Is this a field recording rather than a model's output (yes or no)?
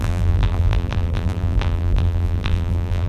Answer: no